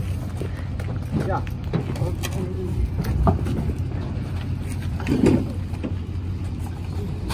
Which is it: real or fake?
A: real